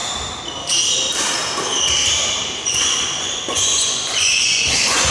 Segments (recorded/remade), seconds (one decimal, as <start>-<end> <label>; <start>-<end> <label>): 0.0-2.6 recorded; 2.6-5.1 remade